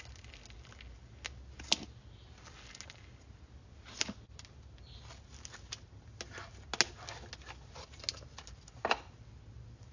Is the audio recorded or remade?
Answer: recorded